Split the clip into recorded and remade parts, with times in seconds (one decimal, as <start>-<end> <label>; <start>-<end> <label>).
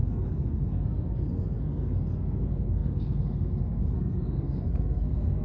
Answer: 0.0-5.4 remade